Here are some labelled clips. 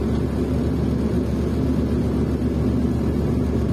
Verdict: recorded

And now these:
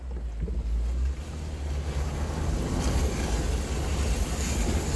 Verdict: recorded